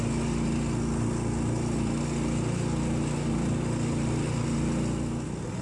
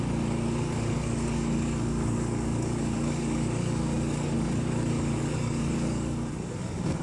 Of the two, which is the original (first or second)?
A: first